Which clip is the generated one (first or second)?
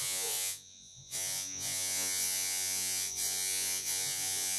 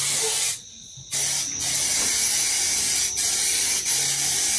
first